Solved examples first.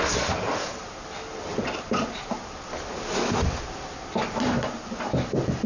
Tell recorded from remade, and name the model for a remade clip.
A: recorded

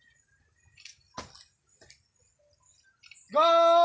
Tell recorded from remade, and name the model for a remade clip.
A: recorded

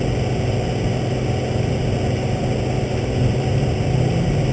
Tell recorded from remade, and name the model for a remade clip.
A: recorded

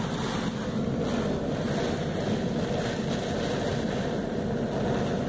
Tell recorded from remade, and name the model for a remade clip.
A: recorded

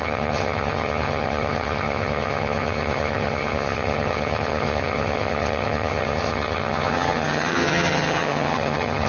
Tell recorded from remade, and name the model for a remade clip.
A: remade, vocoder, HiFi-GAN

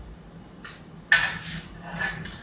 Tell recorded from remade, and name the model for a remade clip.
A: recorded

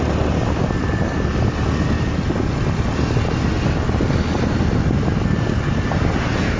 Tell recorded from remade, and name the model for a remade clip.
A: recorded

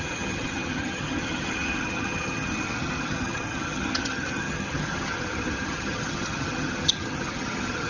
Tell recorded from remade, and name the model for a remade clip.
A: remade, vocoder, HiFi-GAN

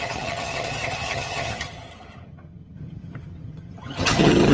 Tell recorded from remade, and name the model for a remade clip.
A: remade, vocoder, HiFi-GAN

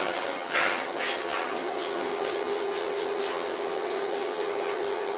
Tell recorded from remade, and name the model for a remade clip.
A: remade, vocoder, HiFi-GAN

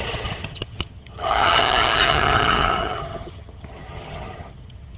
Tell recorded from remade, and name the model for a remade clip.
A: remade, vocoder, HiFi-GAN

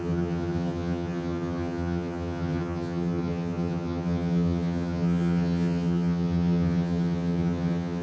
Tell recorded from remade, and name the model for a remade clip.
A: remade, vocoder, HiFi-GAN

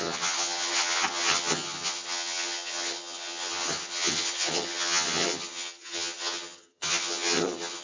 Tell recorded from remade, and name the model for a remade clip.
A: remade, vocoder, HiFi-GAN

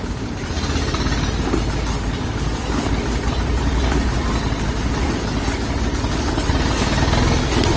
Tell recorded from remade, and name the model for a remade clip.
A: recorded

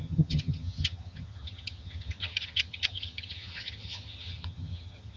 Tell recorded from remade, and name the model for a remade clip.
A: remade, vocoder, HiFi-GAN